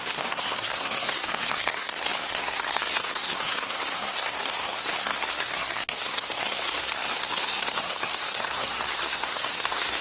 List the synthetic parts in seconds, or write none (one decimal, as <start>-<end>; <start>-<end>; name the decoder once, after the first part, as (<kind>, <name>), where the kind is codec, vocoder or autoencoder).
0.0-10.0 (codec, SNAC)